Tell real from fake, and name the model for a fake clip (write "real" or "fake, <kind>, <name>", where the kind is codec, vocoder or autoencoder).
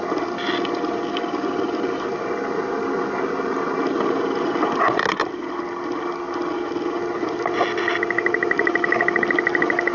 real